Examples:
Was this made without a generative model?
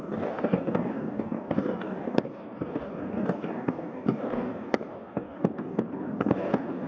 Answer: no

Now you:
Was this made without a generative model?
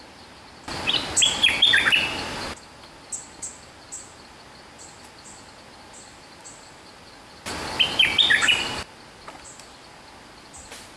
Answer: yes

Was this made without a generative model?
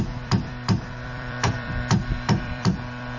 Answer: no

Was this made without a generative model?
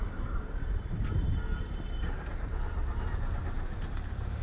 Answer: no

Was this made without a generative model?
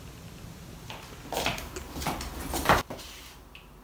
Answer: yes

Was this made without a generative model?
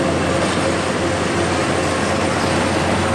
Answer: yes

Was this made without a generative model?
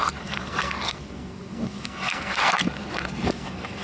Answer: no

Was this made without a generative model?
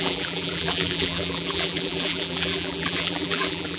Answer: no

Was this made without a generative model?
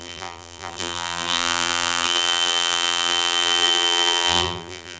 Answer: no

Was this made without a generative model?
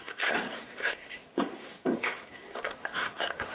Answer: no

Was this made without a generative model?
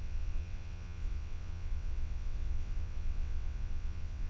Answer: no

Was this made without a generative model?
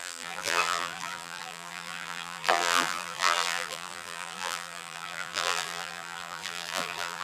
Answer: no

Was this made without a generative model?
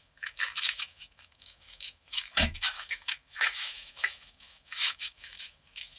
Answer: no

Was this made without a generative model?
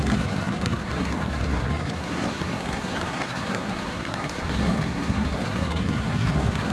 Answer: no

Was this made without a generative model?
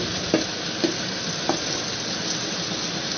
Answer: yes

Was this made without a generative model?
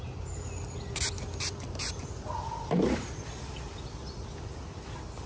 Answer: yes